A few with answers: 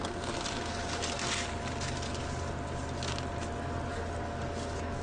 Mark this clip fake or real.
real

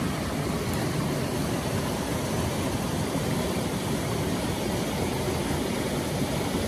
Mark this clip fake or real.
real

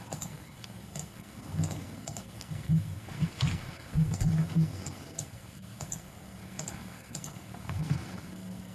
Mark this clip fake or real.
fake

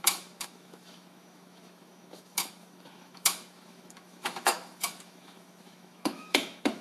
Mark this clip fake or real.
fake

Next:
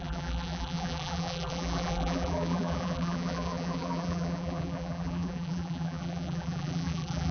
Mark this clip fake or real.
fake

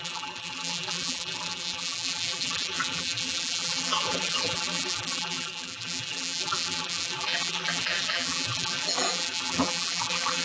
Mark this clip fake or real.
fake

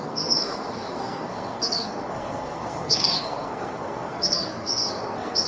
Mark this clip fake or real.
fake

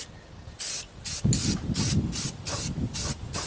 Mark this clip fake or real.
real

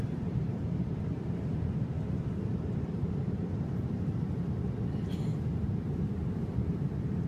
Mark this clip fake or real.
fake